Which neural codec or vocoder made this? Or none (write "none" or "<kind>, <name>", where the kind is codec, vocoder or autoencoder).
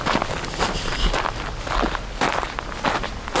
none